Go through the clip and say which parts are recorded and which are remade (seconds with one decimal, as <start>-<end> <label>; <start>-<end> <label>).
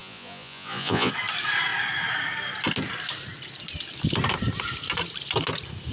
0.0-1.1 remade; 1.1-5.9 recorded